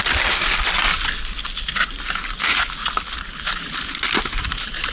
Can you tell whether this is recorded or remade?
recorded